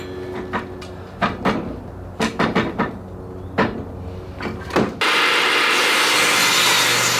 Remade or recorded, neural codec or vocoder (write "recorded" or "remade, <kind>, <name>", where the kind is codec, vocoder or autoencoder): recorded